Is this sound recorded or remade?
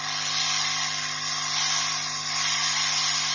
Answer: recorded